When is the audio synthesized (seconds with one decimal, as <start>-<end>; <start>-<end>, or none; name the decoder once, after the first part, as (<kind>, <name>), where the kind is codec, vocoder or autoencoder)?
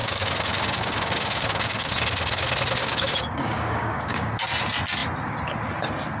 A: 0.0-1.9 (codec, DAC); 2.8-4.3